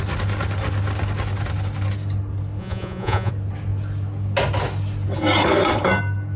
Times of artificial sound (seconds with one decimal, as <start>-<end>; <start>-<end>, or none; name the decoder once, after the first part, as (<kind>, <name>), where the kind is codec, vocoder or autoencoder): 2.6-3.3 (vocoder, Vocos)